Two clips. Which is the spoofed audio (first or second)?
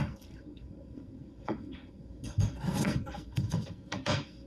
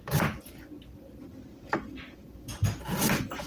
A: first